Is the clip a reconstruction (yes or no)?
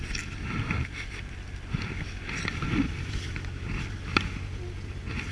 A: no